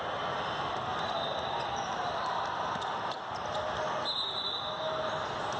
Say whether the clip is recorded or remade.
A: recorded